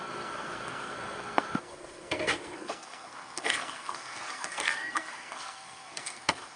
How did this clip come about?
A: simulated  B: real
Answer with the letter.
A